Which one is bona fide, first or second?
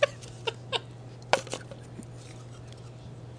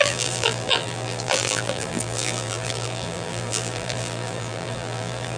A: first